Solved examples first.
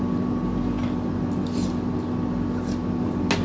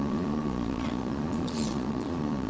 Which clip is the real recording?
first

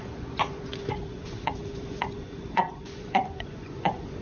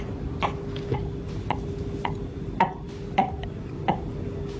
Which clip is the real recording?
second